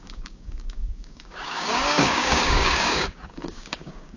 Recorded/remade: remade